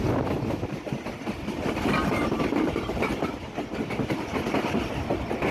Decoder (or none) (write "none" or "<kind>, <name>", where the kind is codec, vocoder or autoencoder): none